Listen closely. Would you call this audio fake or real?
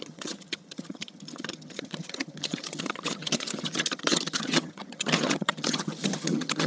fake